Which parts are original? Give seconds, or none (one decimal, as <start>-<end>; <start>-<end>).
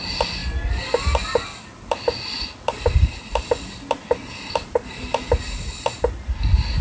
0.0-6.8